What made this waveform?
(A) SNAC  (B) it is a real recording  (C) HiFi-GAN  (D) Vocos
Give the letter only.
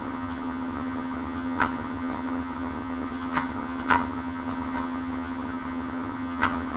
C